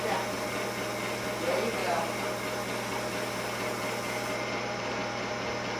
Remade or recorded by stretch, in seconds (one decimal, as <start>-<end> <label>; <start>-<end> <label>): 0.0-1.8 recorded; 1.8-5.3 remade; 5.3-5.8 recorded